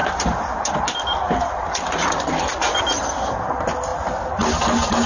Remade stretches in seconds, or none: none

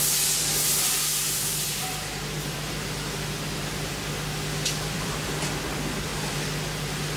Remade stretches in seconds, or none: 1.2-5.5

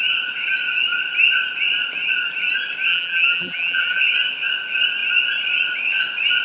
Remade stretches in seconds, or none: 2.9-4.0

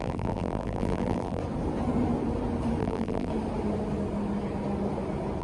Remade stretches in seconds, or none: 0.0-1.4; 2.8-3.3

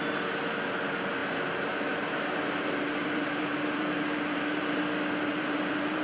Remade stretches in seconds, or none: 1.2-4.8; 5.3-6.0

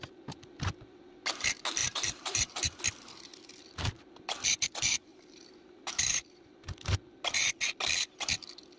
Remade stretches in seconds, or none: 1.8-2.8; 5.1-6.7

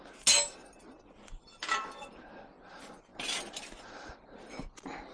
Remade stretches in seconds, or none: 0.6-2.2; 3.1-3.9